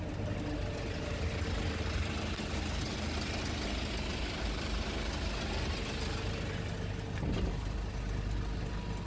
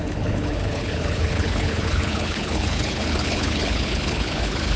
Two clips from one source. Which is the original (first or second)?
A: first